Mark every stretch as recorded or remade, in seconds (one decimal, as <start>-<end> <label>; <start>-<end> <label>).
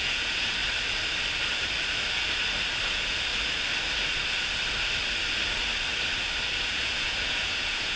0.0-0.6 remade; 0.6-2.9 recorded; 2.9-3.3 remade; 3.3-6.6 recorded; 6.6-8.0 remade